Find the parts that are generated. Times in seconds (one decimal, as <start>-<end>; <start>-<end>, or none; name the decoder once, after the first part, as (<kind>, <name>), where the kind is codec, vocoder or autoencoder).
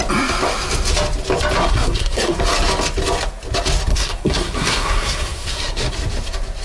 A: 1.6-2.4 (codec, SNAC); 3.9-5.9